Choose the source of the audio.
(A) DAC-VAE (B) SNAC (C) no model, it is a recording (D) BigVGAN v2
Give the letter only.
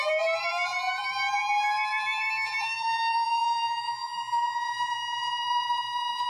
D